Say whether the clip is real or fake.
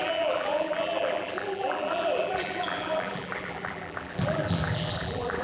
fake